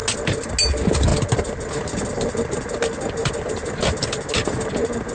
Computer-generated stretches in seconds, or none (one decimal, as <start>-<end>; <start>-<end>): 3.2-3.8

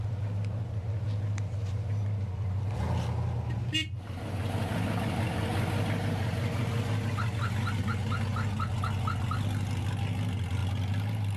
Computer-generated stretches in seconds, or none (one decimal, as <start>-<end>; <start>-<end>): none

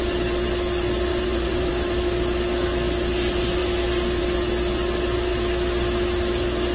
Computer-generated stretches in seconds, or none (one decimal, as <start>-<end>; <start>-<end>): 1.1-1.7

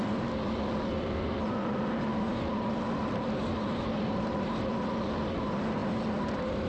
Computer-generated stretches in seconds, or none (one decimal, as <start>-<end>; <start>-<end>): 0.0-5.8

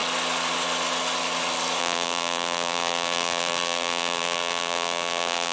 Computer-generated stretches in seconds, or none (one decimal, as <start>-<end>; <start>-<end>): 1.8-5.5

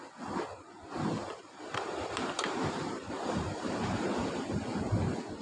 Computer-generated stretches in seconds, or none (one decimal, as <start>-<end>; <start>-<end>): 1.4-4.6

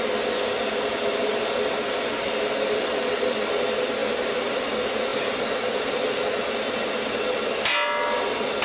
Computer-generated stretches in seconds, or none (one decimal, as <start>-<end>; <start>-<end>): 0.9-2.3; 5.1-6.4